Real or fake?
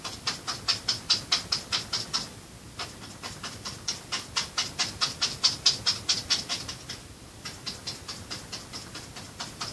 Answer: real